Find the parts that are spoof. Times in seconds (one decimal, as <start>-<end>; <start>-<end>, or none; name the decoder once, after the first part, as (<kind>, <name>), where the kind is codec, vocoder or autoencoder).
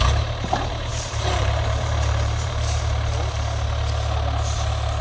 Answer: 0.9-2.8 (vocoder, BigVGAN v2)